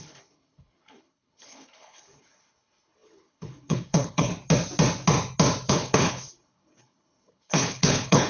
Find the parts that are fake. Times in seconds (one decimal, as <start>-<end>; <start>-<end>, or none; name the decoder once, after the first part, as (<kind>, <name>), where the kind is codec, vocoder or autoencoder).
0.0-4.3 (codec, HILCodec); 5.7-8.3